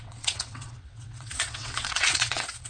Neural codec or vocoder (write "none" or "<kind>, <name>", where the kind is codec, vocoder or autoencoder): vocoder, WaveNeXt